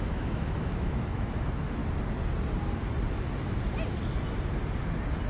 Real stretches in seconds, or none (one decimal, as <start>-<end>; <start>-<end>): 1.8-5.3